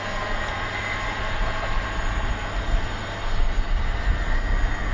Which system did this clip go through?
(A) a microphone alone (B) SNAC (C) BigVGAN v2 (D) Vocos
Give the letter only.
A